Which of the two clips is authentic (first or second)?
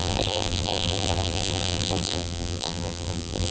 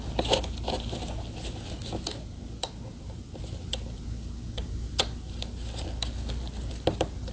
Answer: second